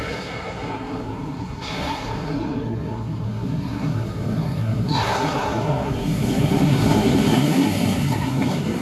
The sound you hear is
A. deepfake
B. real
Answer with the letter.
A